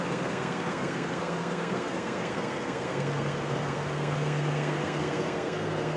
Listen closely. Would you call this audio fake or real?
fake